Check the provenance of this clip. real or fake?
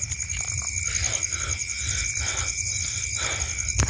real